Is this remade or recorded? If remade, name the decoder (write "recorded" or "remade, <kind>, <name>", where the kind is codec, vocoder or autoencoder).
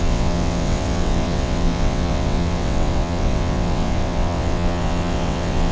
remade, vocoder, WaveNeXt